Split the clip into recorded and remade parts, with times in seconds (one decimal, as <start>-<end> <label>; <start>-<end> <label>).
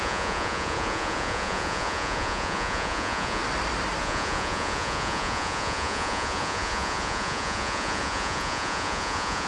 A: 0.0-3.4 remade; 3.4-4.0 recorded; 4.0-9.5 remade